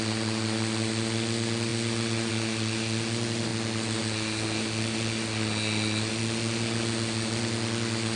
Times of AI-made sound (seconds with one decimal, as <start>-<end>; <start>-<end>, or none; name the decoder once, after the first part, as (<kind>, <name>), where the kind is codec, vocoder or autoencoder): none